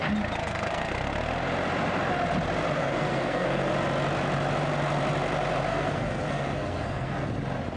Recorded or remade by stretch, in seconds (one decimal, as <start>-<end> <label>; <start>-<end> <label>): 0.0-0.4 recorded; 0.4-0.9 remade; 0.9-2.8 recorded; 2.8-3.7 remade; 3.7-5.7 recorded; 5.7-7.3 remade; 7.3-7.8 recorded